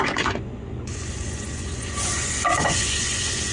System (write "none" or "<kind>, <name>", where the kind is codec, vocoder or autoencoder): vocoder, Vocos